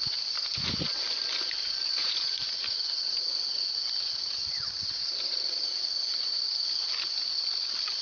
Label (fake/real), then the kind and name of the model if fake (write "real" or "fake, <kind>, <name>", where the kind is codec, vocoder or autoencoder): real